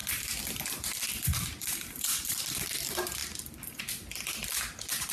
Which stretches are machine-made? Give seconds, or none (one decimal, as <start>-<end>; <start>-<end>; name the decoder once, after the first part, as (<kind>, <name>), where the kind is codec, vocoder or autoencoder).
0.0-2.6 (vocoder, BigVGAN v2); 3.2-3.8

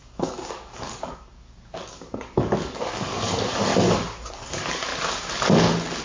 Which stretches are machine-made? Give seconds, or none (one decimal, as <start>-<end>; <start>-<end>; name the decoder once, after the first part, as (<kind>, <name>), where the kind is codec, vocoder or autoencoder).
0.0-3.7 (codec, DAC); 4.3-4.9

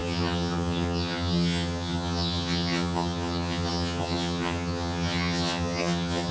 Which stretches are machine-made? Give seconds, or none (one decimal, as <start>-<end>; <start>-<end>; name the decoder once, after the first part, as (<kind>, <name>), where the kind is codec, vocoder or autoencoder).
0.0-6.3 (vocoder, HiFi-GAN)

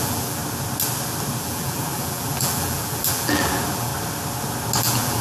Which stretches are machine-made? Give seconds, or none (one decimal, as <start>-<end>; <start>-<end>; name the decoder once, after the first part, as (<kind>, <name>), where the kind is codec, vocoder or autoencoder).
0.0-0.4 (vocoder, BigVGAN v2); 1.4-3.9; 4.8-5.2

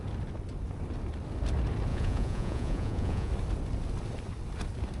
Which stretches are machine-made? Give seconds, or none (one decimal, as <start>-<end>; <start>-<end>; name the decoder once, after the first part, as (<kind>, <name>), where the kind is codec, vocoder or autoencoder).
1.9-3.3 (vocoder, Vocos)